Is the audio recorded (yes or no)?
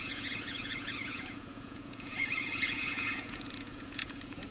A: no